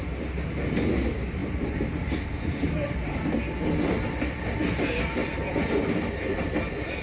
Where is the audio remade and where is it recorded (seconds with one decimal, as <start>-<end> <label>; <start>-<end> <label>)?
0.0-7.0 recorded